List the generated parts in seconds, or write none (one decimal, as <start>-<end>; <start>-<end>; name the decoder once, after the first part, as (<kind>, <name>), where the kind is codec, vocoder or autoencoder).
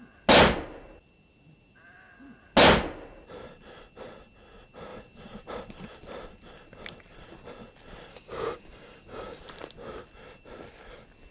8.1-9.4 (codec, DAC)